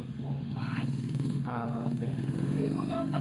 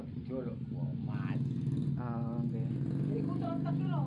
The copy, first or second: first